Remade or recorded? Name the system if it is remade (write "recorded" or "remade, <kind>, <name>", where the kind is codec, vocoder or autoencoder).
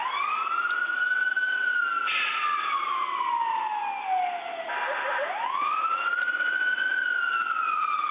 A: recorded